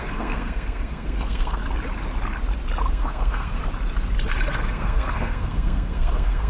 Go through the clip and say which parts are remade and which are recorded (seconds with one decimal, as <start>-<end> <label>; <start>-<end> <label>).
0.0-1.6 remade; 1.6-2.9 recorded; 2.9-3.6 remade; 3.6-4.5 recorded; 4.5-6.5 remade